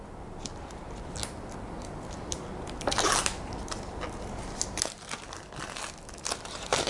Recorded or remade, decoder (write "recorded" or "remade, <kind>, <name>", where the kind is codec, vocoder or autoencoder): recorded